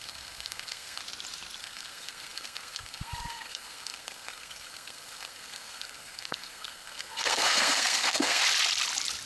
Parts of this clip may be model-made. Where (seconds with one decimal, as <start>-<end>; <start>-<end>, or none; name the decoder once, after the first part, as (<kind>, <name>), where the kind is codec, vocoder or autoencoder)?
0.0-1.0 (codec, SNAC); 1.6-8.4